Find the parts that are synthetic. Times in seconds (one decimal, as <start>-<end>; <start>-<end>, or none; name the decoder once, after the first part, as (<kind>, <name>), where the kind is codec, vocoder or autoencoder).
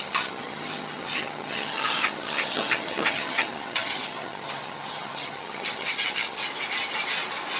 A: 0.0-6.4 (vocoder, HiFi-GAN)